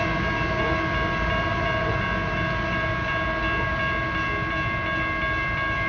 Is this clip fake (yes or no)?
no